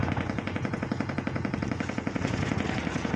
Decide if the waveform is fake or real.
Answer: fake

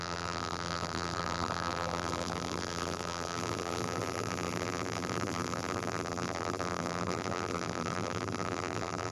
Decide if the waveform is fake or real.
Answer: fake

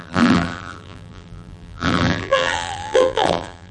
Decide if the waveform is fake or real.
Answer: fake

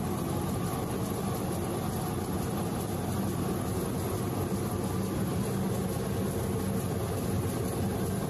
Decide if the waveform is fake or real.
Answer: real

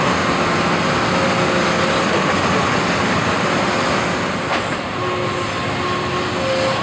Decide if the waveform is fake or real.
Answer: real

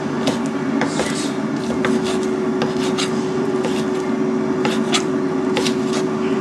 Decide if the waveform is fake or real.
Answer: real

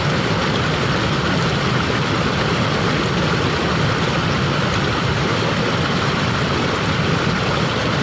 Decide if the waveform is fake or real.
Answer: real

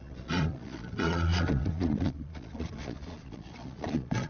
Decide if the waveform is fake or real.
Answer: fake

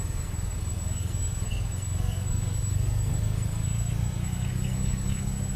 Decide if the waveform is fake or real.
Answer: fake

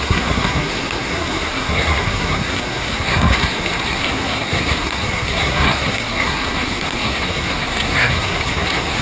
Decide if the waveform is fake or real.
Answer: fake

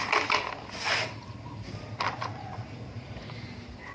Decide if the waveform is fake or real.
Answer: real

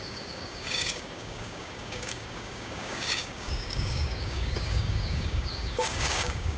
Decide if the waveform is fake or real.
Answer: fake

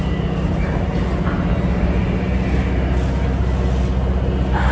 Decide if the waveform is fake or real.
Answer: real